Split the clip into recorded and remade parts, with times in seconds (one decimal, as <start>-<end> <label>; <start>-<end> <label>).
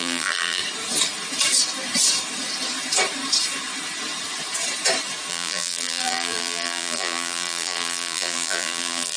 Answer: 0.0-0.6 remade; 0.6-5.3 recorded; 5.3-9.2 remade